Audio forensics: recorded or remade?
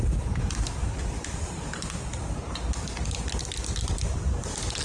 recorded